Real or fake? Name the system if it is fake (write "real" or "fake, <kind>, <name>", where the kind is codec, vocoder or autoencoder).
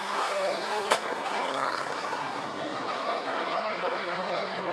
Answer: fake, codec, SNAC